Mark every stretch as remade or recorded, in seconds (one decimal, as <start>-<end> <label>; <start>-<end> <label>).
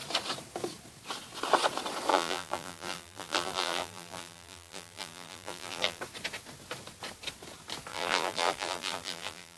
0.0-2.1 recorded; 2.1-6.0 remade; 6.0-7.9 recorded; 7.9-9.6 remade